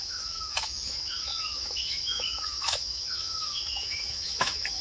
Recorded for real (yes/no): no